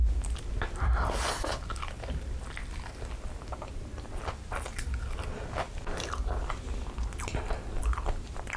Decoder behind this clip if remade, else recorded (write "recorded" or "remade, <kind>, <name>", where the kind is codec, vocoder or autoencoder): recorded